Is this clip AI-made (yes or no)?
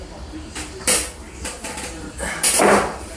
yes